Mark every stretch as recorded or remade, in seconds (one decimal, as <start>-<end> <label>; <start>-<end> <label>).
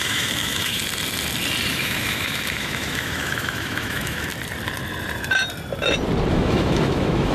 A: 0.0-0.8 remade; 0.8-1.7 recorded; 1.7-4.3 remade; 4.3-6.3 recorded; 6.3-7.3 remade